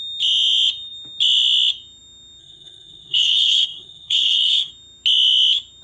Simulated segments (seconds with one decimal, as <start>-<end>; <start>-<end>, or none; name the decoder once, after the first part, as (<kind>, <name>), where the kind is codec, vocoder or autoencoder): 2.4-4.7 (codec, SNAC)